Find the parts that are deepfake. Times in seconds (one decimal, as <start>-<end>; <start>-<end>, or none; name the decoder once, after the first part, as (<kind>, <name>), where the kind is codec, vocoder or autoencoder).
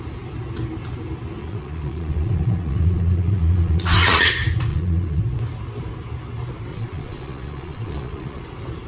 1.4-4.3 (vocoder, Vocos); 4.7-5.2; 6.7-8.4